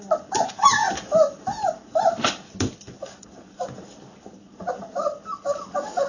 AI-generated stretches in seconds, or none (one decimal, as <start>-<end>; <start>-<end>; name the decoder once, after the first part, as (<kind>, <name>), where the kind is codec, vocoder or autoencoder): none